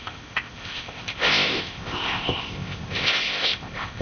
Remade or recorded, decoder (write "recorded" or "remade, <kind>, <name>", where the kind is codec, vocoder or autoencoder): remade, codec, ZipCodec